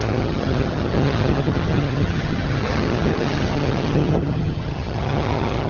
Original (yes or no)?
no